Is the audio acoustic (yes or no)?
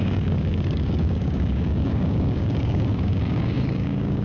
no